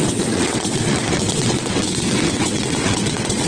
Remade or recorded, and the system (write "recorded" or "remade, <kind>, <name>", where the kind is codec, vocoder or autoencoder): remade, vocoder, WaveNeXt